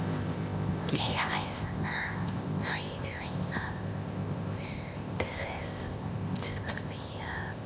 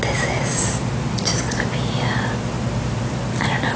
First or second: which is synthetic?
first